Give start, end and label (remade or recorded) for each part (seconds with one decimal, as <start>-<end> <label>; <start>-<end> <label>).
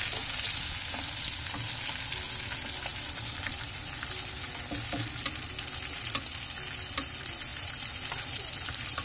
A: 0.0-2.9 recorded; 2.9-4.5 remade; 4.5-9.0 recorded